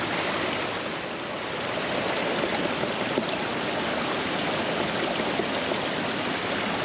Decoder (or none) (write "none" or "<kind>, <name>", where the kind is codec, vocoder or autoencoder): none